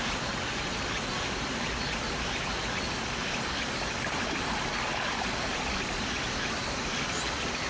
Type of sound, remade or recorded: recorded